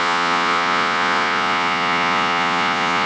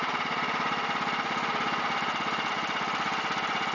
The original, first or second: second